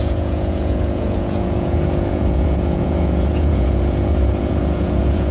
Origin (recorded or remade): remade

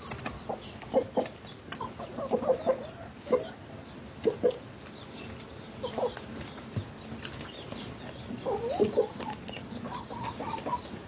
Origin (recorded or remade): recorded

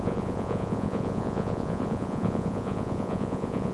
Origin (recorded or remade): remade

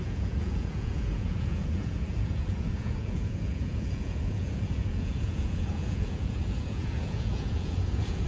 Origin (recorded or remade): remade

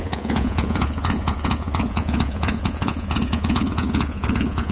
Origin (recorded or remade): remade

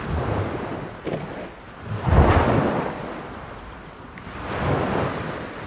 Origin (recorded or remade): recorded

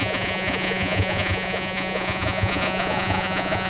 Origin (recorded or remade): remade